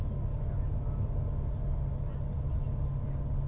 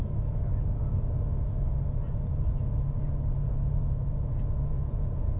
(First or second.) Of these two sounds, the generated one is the second